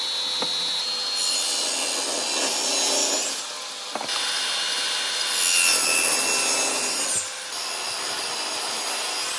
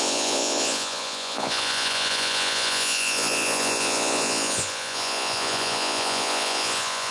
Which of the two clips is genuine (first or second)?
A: first